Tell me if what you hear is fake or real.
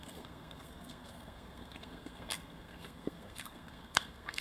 fake